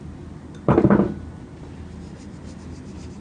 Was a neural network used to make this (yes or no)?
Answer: no